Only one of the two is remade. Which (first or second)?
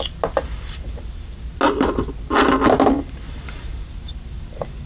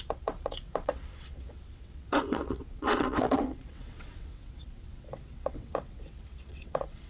second